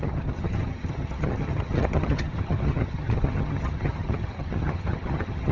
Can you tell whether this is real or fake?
fake